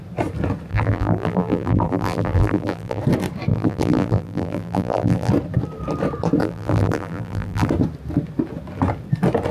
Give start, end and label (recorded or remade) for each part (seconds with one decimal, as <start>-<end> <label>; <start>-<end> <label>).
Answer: 0.0-0.7 recorded; 0.7-3.0 remade; 3.0-3.5 recorded; 3.5-5.3 remade; 5.3-6.4 recorded; 6.4-7.7 remade; 7.7-9.5 recorded